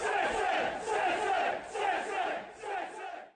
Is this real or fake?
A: real